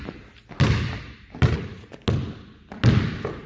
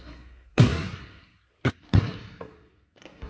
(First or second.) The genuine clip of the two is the first